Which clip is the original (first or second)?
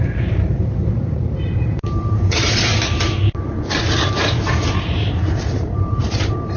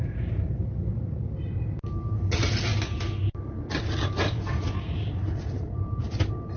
second